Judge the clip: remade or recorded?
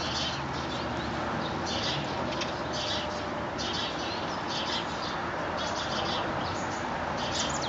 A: recorded